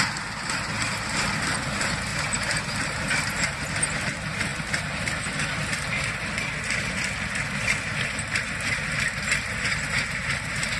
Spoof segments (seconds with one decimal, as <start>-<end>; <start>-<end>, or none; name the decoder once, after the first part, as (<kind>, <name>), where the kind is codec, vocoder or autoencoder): none